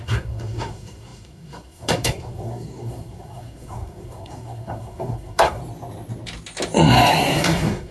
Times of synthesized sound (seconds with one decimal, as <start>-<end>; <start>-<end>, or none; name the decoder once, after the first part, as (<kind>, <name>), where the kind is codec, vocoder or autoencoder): 0.0-5.6 (codec, SNAC); 7.1-7.9